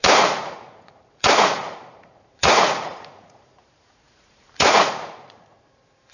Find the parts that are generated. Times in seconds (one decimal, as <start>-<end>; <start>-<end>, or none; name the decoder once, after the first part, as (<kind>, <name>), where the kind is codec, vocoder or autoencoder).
0.0-6.1 (vocoder, Vocos)